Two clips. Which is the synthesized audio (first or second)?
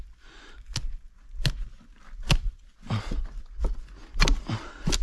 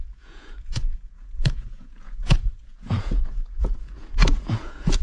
second